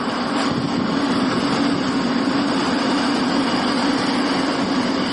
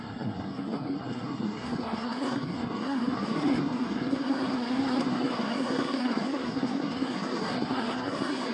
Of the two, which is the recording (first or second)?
first